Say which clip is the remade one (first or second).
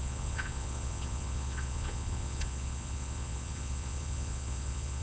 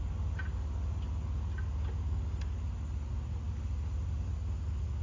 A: first